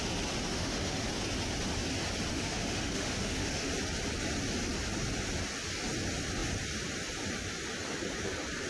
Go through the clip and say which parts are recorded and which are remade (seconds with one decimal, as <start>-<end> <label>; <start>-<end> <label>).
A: 0.0-0.5 recorded; 0.5-1.1 remade; 1.1-2.3 recorded; 2.3-3.7 remade; 3.7-8.7 recorded